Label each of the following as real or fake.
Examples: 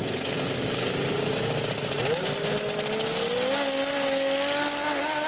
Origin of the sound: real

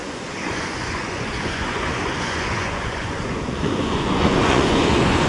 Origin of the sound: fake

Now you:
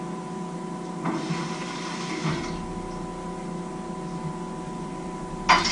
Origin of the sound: real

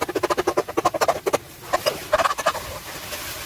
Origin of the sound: real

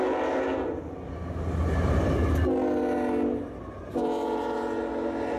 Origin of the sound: real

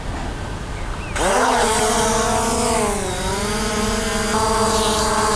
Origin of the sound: real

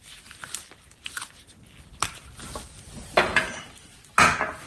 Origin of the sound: real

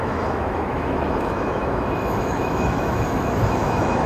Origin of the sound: fake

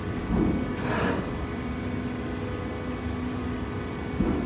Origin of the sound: real